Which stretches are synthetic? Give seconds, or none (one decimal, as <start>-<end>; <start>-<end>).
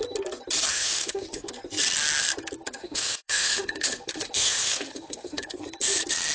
0.7-1.5; 2.8-5.6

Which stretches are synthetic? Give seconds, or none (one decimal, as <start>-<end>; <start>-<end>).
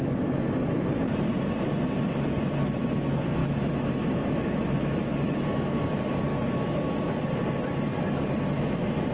3.4-5.8; 6.3-7.1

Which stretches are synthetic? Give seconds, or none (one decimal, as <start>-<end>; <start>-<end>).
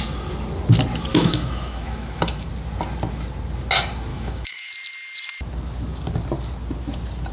1.1-2.5; 4.1-4.7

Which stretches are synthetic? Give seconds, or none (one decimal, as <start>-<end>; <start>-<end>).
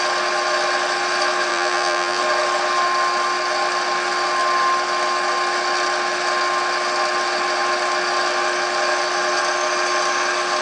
1.5-2.2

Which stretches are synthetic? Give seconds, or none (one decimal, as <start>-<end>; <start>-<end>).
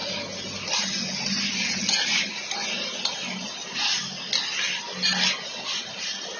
none